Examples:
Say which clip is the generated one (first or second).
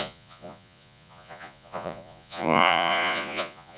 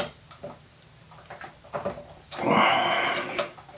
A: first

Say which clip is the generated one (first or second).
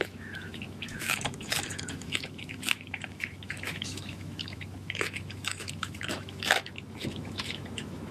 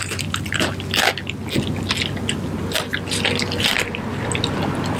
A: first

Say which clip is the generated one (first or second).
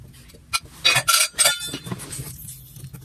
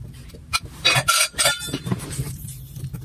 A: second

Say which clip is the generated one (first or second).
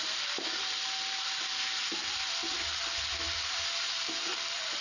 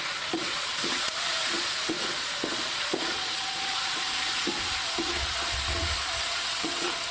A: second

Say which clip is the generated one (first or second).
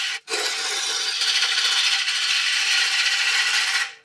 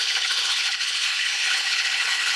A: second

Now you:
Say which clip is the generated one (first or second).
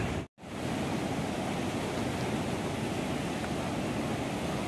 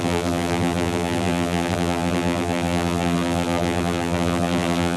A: second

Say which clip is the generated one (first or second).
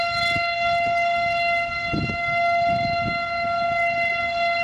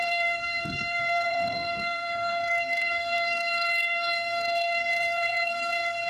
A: second